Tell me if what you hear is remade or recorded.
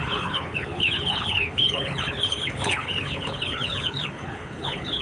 remade